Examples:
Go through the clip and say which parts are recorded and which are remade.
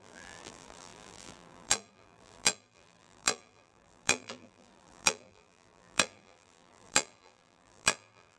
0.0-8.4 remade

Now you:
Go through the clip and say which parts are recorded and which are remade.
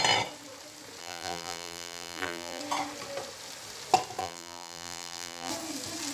0.0-1.0 recorded; 1.0-2.6 remade; 2.6-4.2 recorded; 4.2-5.5 remade; 5.5-6.1 recorded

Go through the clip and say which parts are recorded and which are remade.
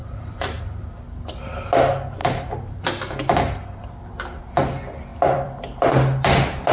0.0-0.6 remade; 0.6-2.2 recorded; 2.2-2.8 remade; 2.8-5.1 recorded; 5.1-5.9 remade; 5.9-6.7 recorded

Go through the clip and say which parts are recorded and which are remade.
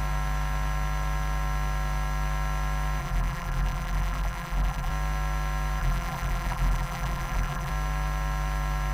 0.0-3.0 recorded; 3.0-4.9 remade; 4.9-5.8 recorded; 5.8-7.7 remade; 7.7-8.9 recorded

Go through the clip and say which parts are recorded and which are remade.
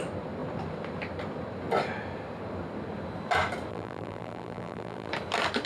0.0-3.7 recorded; 3.7-5.1 remade; 5.1-5.7 recorded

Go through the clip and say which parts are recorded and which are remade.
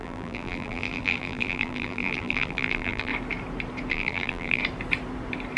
0.0-3.1 remade; 3.1-3.9 recorded; 3.9-4.6 remade; 4.6-5.6 recorded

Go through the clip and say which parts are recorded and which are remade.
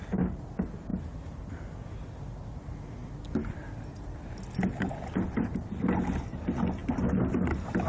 0.0-0.9 recorded; 0.9-1.5 remade; 1.5-7.9 recorded